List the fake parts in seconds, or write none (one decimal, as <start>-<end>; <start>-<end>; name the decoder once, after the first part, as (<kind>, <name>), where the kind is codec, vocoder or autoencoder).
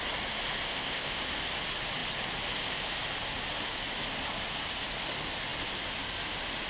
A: 0.7-1.2 (codec, ZipCodec)